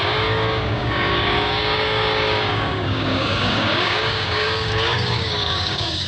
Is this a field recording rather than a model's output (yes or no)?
no